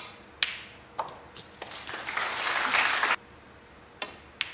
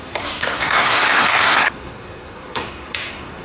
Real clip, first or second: first